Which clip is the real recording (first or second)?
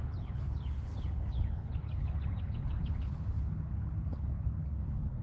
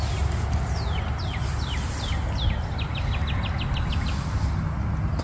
second